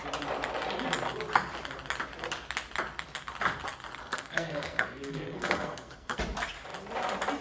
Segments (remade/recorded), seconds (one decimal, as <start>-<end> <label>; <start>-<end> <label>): 0.0-4.0 recorded; 4.0-6.2 remade; 6.2-7.4 recorded